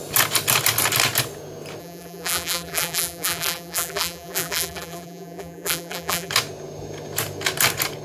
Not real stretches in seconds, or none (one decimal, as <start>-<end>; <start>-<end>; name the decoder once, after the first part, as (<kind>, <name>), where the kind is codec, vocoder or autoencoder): 1.8-6.3 (vocoder, BigVGAN v2)